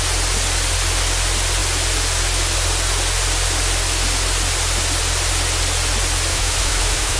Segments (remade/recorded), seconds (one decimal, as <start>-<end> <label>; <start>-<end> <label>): 0.0-6.3 recorded; 6.3-7.2 remade